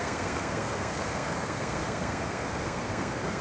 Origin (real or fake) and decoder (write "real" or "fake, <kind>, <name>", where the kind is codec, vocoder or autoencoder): fake, codec, SNAC